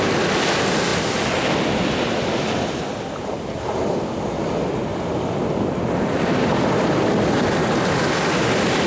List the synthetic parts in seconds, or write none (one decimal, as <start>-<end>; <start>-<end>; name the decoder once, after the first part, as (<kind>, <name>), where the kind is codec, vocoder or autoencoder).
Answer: 0.0-0.9 (vocoder, BigVGAN v2); 5.9-8.9